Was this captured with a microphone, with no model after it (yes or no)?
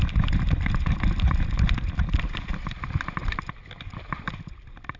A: no